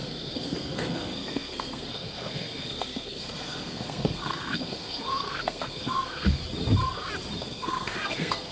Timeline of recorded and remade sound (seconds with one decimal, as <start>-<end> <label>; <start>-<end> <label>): 0.0-6.4 remade; 6.4-7.4 recorded; 7.4-8.5 remade